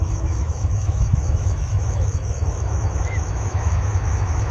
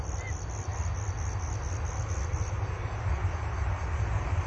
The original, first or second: second